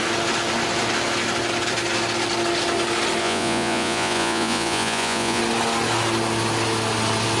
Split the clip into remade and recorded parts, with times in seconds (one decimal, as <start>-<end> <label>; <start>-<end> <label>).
0.0-3.2 recorded; 3.2-5.4 remade; 5.4-7.4 recorded

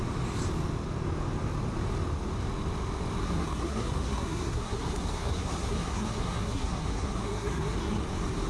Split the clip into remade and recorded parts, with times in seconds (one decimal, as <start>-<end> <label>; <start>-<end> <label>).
0.0-3.2 recorded; 3.2-8.0 remade; 8.0-8.5 recorded

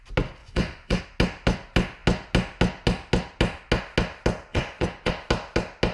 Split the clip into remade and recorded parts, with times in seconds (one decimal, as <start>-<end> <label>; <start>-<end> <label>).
0.0-0.4 recorded; 0.4-1.0 remade; 1.0-4.5 recorded; 4.5-5.1 remade; 5.1-5.9 recorded

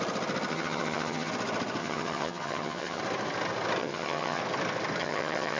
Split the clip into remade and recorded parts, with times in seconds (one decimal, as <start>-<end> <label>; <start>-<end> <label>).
0.0-0.5 recorded; 0.5-1.3 remade; 1.3-1.8 recorded; 1.8-3.0 remade; 3.0-3.8 recorded; 3.8-4.4 remade; 4.4-5.0 recorded; 5.0-5.6 remade

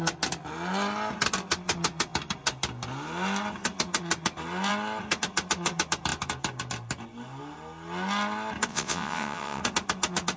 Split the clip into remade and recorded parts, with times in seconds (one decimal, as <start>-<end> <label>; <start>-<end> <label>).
0.0-8.7 recorded; 8.7-9.6 remade; 9.6-10.4 recorded

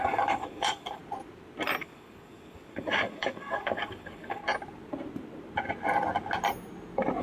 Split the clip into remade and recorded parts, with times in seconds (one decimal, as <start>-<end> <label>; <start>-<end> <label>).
0.0-1.0 remade; 1.0-1.8 recorded; 1.8-4.4 remade; 4.4-7.2 recorded

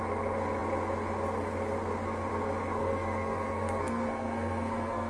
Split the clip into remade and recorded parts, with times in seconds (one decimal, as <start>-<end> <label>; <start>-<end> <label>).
0.0-2.8 recorded; 2.8-5.1 remade